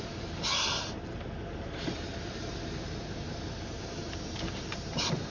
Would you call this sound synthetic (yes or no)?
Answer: yes